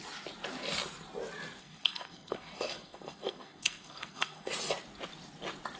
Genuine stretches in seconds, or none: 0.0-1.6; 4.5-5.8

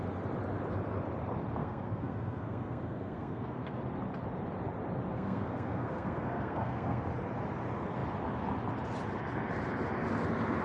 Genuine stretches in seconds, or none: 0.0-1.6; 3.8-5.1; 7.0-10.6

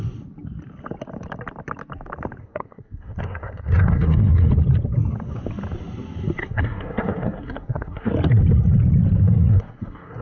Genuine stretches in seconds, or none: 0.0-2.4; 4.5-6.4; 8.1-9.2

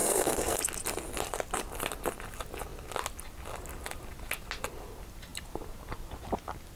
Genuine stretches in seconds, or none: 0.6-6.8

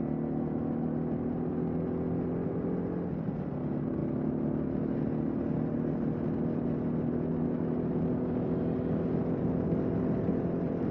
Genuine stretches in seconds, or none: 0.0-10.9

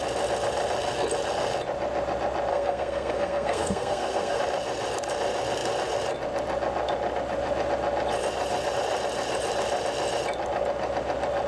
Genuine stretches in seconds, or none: 0.0-2.5; 4.4-11.5

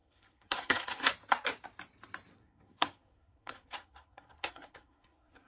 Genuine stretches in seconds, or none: 1.1-2.3